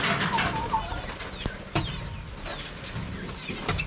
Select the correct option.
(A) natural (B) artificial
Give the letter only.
A